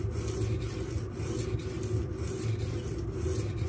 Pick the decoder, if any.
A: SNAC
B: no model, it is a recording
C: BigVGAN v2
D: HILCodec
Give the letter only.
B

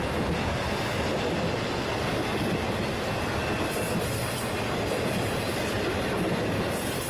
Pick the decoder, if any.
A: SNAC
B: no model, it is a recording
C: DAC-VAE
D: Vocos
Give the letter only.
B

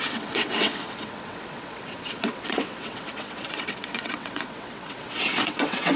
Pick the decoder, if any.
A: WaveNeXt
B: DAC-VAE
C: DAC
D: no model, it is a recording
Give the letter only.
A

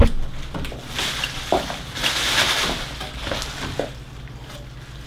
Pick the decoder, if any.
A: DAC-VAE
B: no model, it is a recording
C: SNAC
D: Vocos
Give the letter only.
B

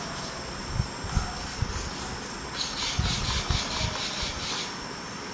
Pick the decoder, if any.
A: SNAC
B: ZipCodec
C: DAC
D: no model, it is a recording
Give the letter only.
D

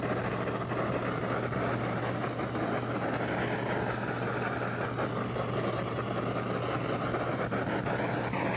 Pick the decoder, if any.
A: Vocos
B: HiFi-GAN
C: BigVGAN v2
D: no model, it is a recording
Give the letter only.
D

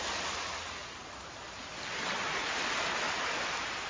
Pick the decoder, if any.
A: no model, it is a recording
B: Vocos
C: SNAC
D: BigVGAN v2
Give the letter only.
A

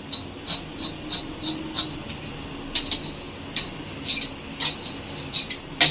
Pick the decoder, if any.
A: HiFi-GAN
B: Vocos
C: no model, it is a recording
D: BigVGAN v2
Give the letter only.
C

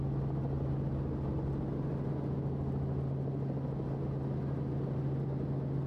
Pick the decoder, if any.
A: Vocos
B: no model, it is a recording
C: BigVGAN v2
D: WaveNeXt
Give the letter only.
B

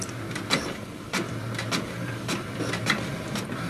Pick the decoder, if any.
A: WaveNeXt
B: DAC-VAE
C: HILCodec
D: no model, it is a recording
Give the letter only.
D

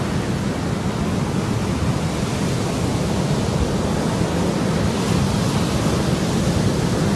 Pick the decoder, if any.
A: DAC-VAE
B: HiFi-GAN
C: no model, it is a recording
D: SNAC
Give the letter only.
C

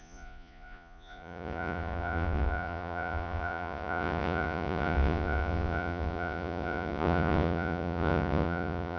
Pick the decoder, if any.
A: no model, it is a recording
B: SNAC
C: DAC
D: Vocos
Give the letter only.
D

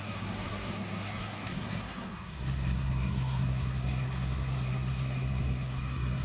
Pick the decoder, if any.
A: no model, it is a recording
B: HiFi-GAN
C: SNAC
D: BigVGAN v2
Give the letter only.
C